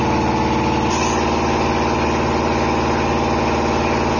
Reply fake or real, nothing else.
real